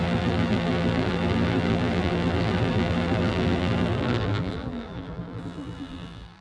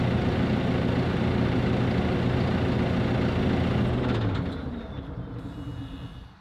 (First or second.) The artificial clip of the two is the first